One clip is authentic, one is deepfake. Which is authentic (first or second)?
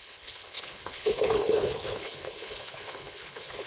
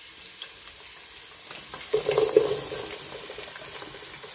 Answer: second